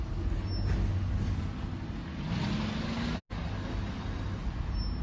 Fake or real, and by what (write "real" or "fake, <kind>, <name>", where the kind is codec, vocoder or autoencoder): real